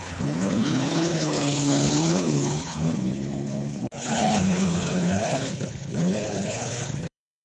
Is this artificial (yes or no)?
yes